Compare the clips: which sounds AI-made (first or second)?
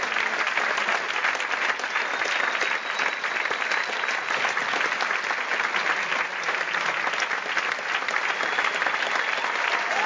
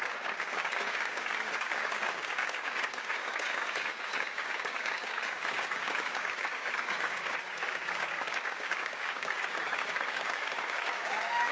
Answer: second